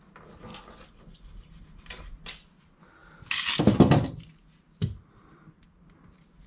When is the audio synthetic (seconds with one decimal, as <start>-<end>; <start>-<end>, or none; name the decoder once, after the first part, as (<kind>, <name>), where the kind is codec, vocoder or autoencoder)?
none